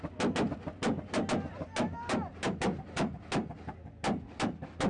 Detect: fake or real real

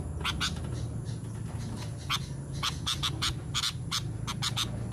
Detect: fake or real real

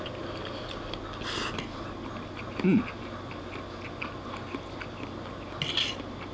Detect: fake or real real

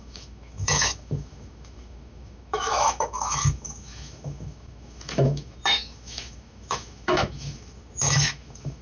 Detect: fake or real fake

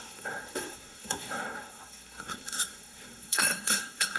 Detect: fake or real fake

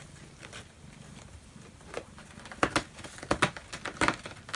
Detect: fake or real real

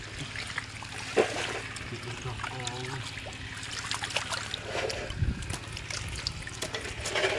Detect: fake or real real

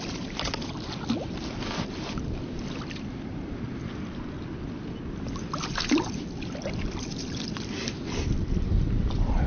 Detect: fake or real real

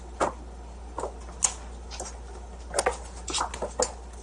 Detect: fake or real real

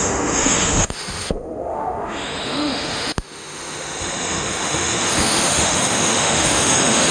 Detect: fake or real fake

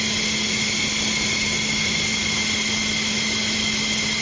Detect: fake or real real